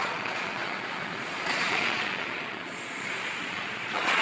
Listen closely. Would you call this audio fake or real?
fake